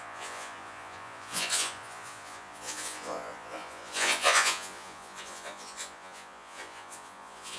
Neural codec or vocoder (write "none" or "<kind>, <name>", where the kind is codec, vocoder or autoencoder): vocoder, Vocos